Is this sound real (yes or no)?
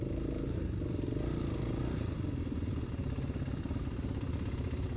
yes